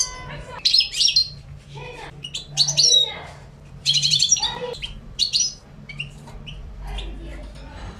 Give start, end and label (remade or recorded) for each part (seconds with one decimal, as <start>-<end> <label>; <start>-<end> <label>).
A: 0.0-1.2 remade; 1.2-3.7 recorded; 3.7-8.0 remade